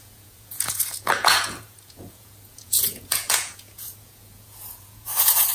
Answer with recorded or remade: remade